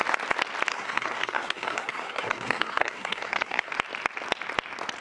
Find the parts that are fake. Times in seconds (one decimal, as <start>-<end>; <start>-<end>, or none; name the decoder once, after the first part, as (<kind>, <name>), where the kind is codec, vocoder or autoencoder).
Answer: 0.7-3.7 (codec, SNAC)